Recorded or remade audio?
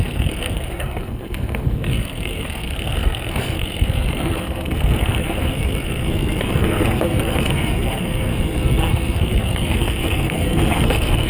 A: remade